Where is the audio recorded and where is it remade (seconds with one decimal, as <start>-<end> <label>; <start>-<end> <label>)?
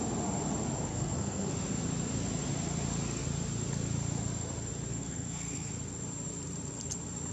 0.0-0.9 recorded; 0.9-1.5 remade; 1.5-4.9 recorded; 4.9-5.7 remade; 5.7-7.3 recorded